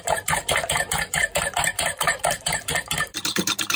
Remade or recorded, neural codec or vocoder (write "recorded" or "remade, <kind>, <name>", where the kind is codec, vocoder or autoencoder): remade, vocoder, BigVGAN v2